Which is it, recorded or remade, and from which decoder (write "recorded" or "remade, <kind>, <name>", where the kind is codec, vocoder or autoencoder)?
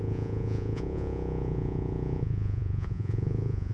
remade, vocoder, Vocos